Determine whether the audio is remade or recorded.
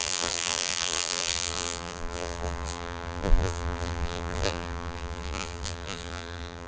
remade